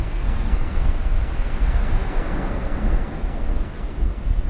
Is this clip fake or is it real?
fake